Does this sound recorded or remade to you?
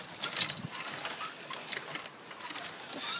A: recorded